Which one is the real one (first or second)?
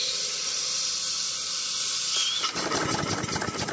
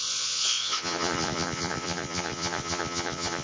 first